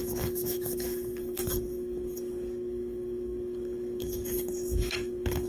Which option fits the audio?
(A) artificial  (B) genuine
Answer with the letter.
A